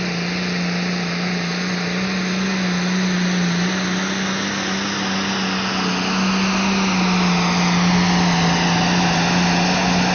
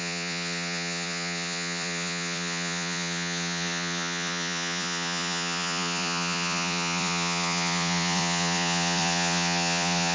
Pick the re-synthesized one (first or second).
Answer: second